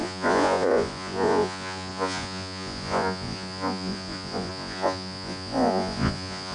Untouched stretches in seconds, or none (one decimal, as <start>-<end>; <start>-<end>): none